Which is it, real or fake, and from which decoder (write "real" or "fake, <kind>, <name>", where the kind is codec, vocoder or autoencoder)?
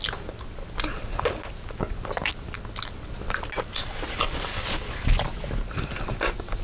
real